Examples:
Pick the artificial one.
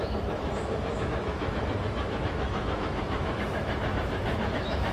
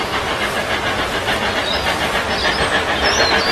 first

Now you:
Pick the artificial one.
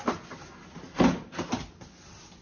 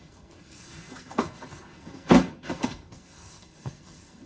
second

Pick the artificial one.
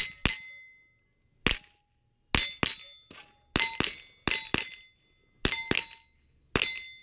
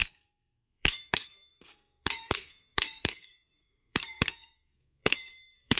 second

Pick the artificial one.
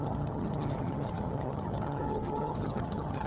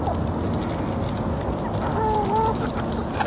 first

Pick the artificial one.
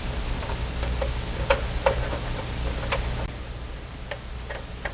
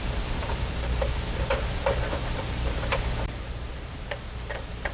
second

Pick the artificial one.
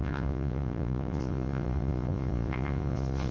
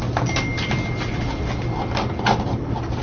first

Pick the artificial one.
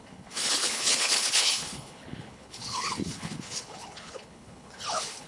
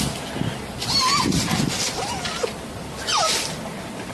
first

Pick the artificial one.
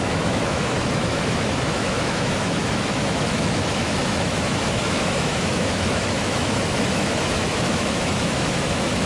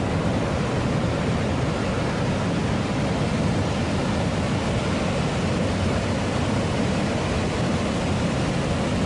first